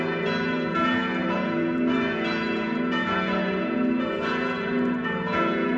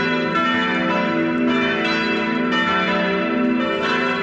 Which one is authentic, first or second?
second